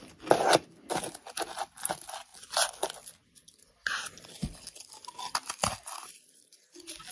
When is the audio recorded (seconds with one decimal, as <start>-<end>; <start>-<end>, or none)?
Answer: 0.0-7.1